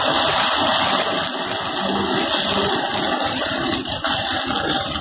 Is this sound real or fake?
real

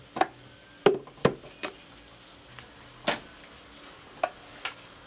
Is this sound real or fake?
real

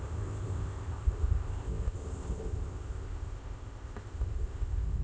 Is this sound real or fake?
fake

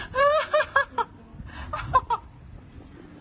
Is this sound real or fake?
real